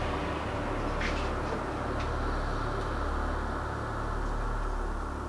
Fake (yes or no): no